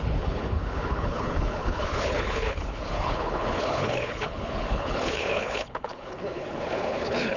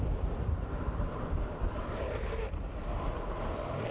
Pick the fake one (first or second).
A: first